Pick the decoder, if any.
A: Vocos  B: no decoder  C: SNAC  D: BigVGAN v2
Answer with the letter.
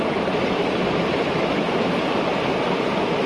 D